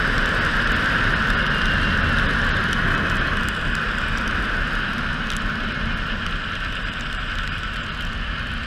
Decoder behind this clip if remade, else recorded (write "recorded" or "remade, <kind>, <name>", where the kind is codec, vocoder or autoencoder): recorded